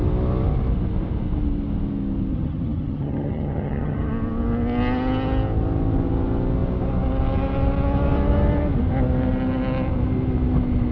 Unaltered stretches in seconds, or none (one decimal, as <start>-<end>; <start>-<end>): 0.0-2.3; 4.1-10.9